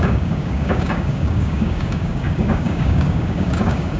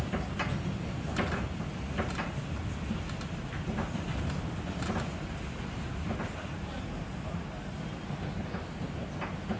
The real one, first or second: second